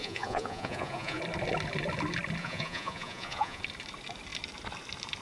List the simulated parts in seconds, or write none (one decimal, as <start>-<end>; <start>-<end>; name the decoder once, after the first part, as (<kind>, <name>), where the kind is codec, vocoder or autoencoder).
0.0-1.2 (vocoder, Vocos); 2.4-3.6